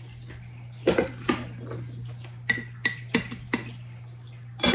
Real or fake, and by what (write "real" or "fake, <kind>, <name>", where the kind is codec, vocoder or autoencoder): real